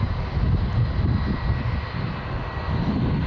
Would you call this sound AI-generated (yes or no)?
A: no